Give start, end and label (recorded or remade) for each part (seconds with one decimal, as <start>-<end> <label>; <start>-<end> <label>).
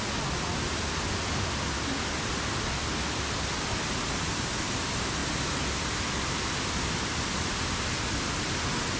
0.0-9.0 recorded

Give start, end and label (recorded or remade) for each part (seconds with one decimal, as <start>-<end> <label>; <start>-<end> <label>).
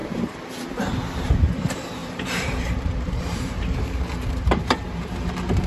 0.0-5.7 remade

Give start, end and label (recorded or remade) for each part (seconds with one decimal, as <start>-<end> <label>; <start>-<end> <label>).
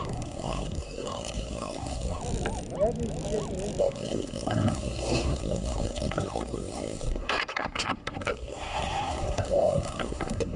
0.0-2.2 remade; 2.2-3.8 recorded; 3.8-10.6 remade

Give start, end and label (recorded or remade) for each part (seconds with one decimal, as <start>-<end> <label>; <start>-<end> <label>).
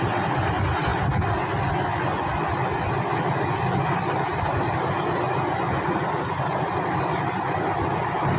0.0-8.4 recorded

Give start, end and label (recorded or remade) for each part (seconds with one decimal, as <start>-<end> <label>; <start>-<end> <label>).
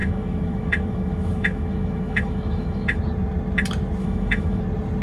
0.0-3.0 remade; 3.0-4.0 recorded; 4.0-4.6 remade; 4.6-5.0 recorded